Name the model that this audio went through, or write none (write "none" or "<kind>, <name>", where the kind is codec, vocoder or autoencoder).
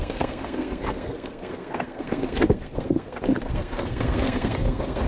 codec, SNAC